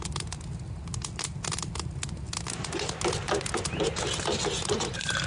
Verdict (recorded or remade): recorded